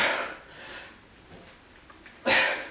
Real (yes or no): yes